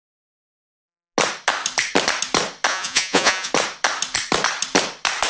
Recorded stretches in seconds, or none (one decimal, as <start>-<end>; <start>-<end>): 0.0-2.7; 3.5-5.3